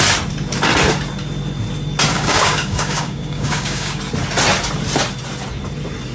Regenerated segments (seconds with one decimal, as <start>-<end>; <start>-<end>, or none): 2.1-4.0